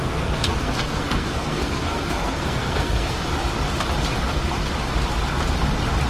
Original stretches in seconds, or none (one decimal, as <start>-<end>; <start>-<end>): 3.2-6.1